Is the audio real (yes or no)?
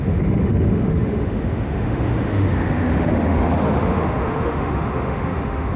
no